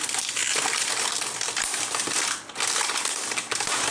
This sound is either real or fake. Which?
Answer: fake